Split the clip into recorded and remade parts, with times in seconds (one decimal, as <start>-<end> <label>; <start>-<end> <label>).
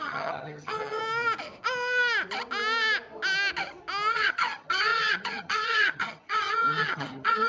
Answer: 0.0-1.0 remade; 1.0-4.1 recorded; 4.1-7.5 remade